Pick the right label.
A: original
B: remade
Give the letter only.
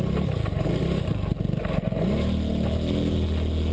A